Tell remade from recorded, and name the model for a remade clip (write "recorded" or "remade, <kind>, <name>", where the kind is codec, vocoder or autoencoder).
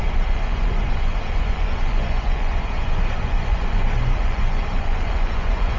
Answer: remade, vocoder, Vocos